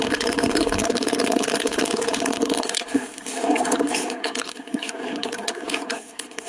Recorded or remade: remade